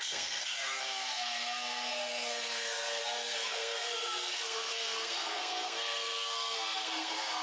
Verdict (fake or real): fake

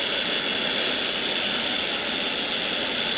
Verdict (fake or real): real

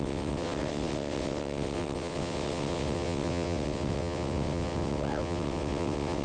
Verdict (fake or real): fake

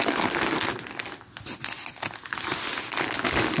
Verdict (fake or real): real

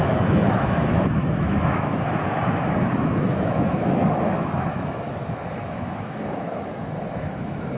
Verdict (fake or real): fake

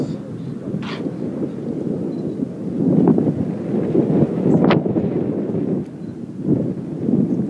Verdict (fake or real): real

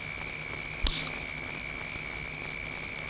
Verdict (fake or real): real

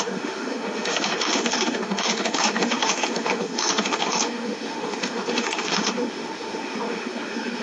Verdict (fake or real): fake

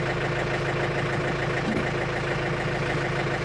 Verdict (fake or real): real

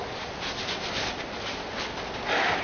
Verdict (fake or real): real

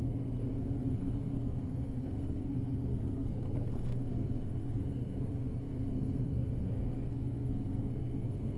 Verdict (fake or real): fake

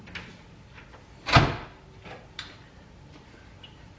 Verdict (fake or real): real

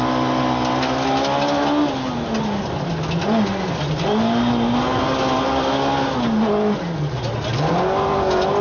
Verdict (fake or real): real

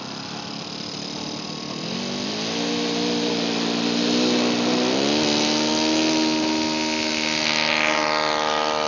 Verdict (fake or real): real